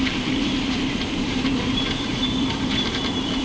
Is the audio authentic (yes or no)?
no